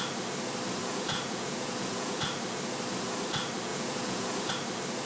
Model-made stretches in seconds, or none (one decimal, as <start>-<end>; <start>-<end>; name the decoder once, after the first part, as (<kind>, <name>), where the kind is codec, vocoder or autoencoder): 0.8-2.2 (vocoder, Vocos); 3.7-4.5